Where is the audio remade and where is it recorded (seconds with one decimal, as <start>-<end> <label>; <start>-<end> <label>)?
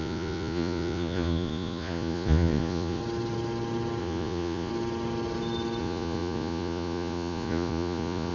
0.0-3.0 remade; 3.0-4.0 recorded; 4.0-4.7 remade; 4.7-5.8 recorded; 5.8-8.3 remade